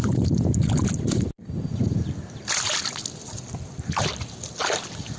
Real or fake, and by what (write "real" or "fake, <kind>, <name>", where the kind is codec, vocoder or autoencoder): real